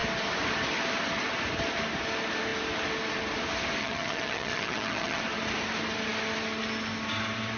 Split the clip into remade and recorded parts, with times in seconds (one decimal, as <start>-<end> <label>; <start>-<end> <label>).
0.0-3.8 recorded; 3.8-5.2 remade; 5.2-7.6 recorded